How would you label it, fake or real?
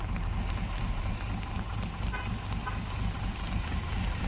real